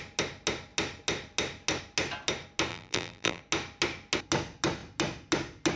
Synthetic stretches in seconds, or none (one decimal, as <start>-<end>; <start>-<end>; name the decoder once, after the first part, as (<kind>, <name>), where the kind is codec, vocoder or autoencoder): 2.7-3.4 (vocoder, BigVGAN v2)